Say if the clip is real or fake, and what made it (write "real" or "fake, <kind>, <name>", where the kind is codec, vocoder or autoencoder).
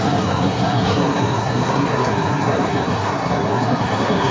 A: fake, codec, SNAC